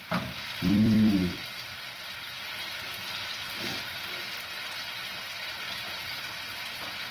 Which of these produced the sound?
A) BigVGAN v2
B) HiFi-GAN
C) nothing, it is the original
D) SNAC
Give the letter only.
A